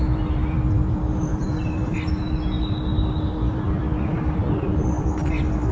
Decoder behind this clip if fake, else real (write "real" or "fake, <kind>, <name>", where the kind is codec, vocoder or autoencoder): real